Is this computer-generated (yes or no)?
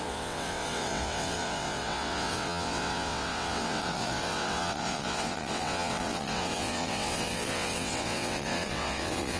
yes